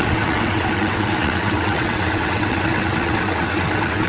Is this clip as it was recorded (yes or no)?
no